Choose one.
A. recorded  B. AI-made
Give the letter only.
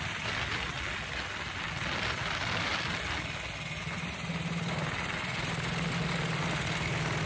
A